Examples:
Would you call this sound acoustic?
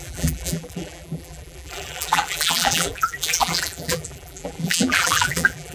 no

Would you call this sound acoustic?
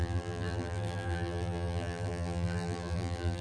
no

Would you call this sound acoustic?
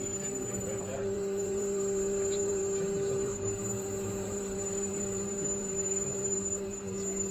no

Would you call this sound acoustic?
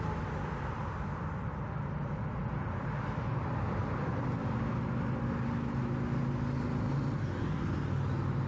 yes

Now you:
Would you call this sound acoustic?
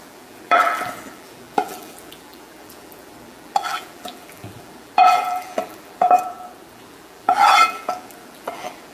no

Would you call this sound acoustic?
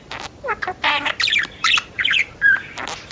no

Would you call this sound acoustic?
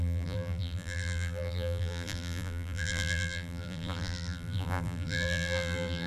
no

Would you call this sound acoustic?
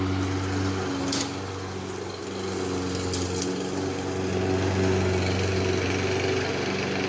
yes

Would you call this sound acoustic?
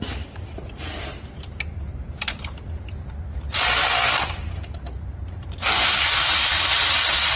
no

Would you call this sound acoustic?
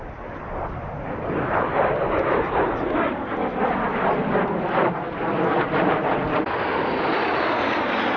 yes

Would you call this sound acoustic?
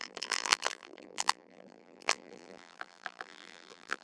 no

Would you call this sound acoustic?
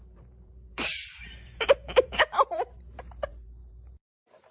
no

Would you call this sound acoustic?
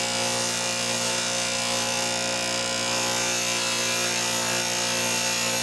yes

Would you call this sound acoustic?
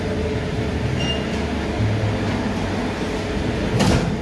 yes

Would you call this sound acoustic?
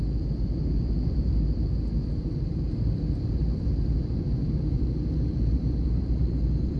no